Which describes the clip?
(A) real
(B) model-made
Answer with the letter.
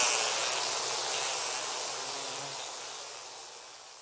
A